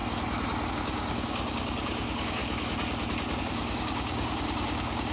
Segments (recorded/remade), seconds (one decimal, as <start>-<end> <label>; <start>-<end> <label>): 0.0-0.7 recorded; 0.7-2.4 remade; 2.4-3.4 recorded; 3.4-5.1 remade